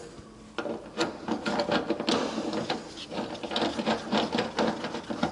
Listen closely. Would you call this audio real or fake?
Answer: real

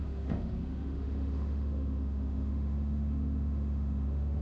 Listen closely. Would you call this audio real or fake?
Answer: fake